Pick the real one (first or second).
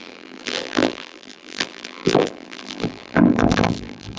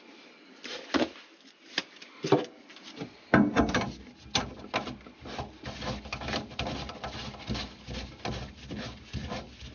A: second